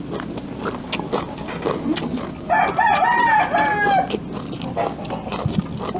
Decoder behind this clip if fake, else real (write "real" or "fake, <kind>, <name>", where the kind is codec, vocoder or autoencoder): real